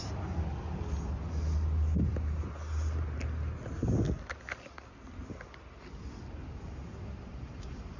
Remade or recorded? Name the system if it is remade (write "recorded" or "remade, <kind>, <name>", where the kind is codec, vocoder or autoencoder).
recorded